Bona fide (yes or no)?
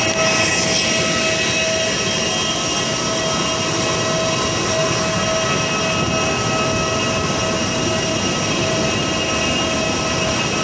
yes